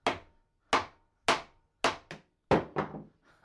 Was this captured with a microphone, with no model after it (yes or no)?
yes